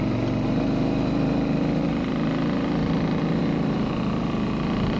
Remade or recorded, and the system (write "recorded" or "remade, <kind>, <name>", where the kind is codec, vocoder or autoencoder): recorded